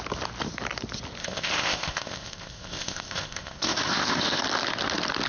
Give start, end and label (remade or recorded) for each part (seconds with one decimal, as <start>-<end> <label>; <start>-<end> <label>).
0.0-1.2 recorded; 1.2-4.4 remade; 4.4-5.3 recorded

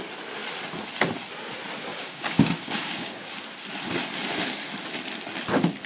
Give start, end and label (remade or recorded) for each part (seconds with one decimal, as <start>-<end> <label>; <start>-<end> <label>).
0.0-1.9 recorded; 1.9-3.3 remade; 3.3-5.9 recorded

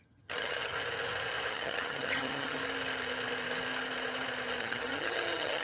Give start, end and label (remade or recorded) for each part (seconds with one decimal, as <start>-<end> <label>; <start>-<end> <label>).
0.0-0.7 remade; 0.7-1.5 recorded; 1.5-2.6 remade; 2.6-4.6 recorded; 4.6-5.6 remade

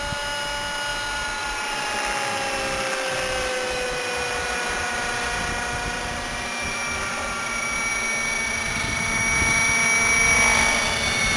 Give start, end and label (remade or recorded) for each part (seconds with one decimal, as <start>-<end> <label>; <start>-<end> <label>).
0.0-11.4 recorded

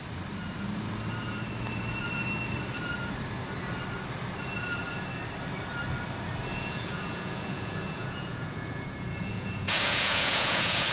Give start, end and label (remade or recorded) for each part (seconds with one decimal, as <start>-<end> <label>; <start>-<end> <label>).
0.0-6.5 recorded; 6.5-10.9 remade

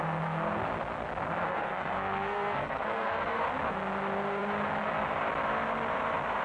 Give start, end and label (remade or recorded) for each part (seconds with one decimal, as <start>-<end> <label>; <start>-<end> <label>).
0.0-1.4 recorded; 1.4-3.4 remade; 3.4-6.4 recorded

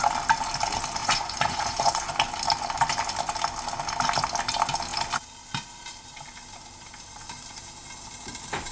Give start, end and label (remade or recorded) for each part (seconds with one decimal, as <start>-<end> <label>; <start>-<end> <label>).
0.0-1.0 recorded; 1.0-2.1 remade; 2.1-8.7 recorded